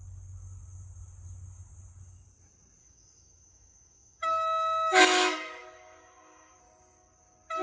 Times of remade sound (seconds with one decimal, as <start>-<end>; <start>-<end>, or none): 2.8-6.6